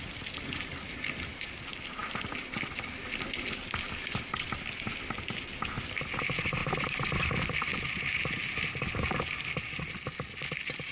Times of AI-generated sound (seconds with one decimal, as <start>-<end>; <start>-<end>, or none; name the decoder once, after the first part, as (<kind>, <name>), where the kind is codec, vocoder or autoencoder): none